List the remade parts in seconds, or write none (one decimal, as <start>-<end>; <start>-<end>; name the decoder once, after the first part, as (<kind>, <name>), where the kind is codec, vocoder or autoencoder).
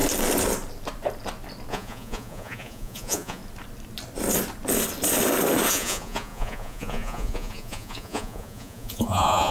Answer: 1.7-3.4 (vocoder, Vocos); 5.7-9.5